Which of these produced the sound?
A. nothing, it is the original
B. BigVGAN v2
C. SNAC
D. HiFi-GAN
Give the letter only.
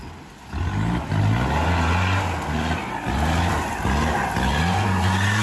A